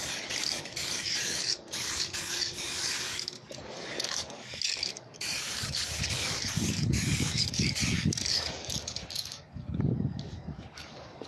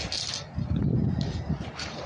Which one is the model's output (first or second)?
first